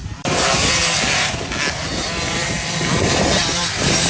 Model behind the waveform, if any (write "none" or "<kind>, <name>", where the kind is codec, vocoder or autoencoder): vocoder, BigVGAN v2